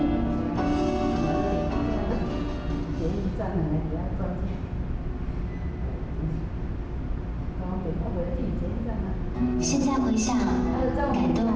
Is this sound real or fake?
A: real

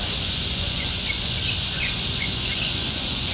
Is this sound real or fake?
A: fake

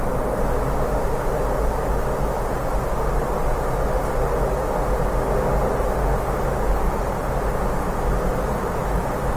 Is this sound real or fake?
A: real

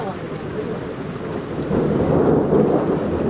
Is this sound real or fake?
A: real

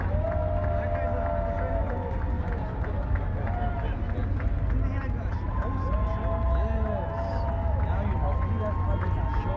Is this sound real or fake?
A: real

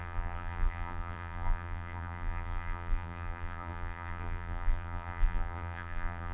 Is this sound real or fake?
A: fake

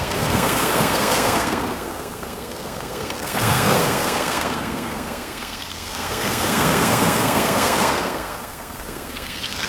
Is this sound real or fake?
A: fake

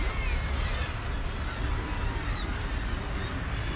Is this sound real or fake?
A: real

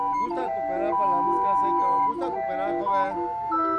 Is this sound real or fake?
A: real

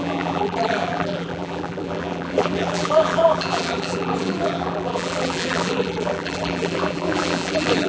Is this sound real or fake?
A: fake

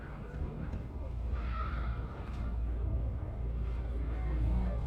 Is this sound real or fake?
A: fake